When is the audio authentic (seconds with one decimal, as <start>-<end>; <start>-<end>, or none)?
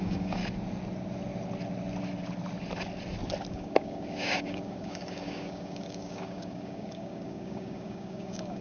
0.4-3.5